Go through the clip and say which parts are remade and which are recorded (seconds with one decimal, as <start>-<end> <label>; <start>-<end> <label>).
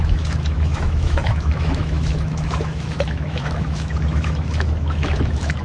0.0-5.6 remade